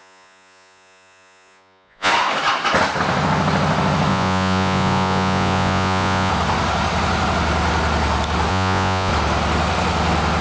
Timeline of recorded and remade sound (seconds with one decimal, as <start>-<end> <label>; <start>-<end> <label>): 0.0-2.1 remade; 2.1-4.1 recorded; 4.1-6.3 remade; 6.3-8.5 recorded; 8.5-9.1 remade; 9.1-10.4 recorded